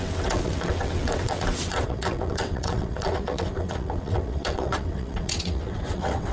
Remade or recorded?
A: remade